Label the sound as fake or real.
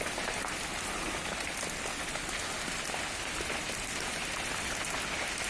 real